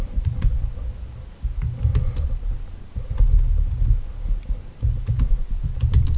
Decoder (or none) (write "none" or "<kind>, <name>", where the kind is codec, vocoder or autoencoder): none